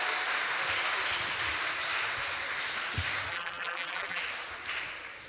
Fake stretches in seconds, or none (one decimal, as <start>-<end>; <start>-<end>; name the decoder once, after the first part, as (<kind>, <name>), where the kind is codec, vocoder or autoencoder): 3.3-4.2 (vocoder, BigVGAN v2)